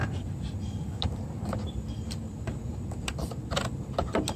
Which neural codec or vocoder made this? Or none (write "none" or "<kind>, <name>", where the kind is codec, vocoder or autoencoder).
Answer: vocoder, BigVGAN v2